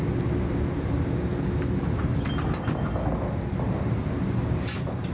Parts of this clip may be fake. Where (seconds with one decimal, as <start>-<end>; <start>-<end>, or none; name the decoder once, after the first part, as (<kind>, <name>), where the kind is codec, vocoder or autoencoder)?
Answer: none